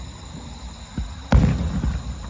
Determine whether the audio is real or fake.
real